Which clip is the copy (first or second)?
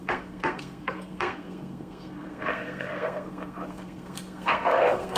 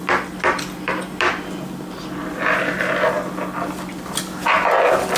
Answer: first